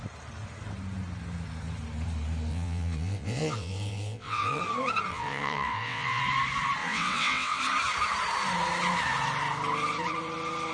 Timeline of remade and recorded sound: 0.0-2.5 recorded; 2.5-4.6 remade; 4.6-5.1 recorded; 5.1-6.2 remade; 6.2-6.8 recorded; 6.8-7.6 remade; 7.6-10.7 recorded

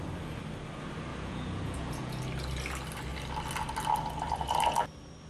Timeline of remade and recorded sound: 0.0-1.1 recorded; 1.1-2.2 remade; 2.2-5.3 recorded

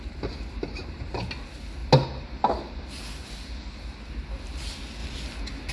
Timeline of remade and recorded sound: 0.0-5.7 recorded

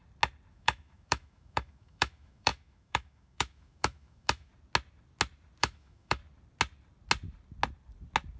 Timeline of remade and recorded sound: 0.0-0.5 recorded; 0.5-4.5 remade; 4.5-5.6 recorded; 5.6-6.2 remade; 6.2-8.4 recorded

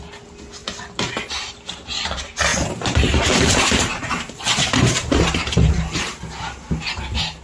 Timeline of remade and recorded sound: 0.0-0.6 recorded; 0.6-1.5 remade; 1.5-2.5 recorded; 2.5-6.2 remade; 6.2-7.4 recorded

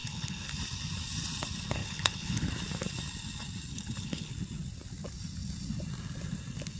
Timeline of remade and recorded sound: 0.0-0.5 remade; 0.5-1.8 recorded; 1.8-2.5 remade; 2.5-3.7 recorded; 3.7-4.3 remade; 4.3-6.8 recorded

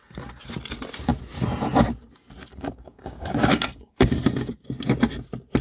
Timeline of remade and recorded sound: 0.0-2.5 recorded; 2.5-4.6 remade; 4.6-5.6 recorded